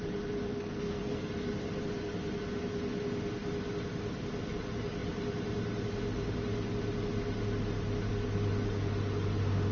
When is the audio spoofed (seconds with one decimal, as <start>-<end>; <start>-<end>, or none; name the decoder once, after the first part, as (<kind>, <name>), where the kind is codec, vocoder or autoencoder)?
0.5-1.3 (codec, SNAC)